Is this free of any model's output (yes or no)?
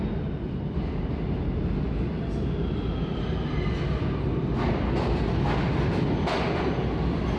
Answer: yes